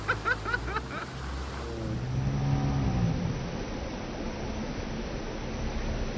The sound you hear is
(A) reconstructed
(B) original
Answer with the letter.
B